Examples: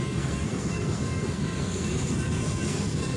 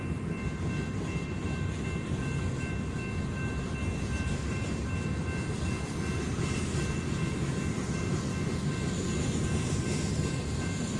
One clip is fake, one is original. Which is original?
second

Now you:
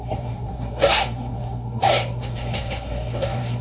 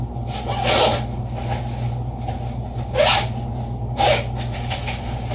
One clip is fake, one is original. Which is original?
second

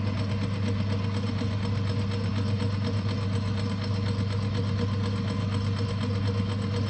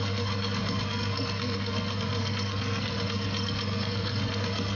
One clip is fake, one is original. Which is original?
first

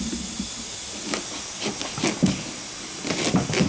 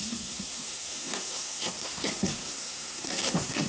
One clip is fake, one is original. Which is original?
first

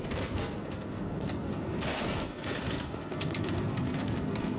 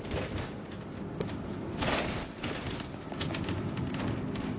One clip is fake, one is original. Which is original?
second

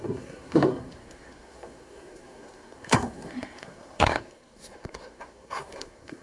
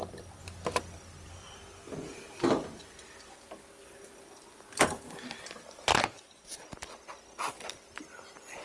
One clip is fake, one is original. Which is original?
second